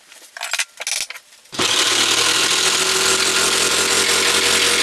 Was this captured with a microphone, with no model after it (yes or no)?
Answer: yes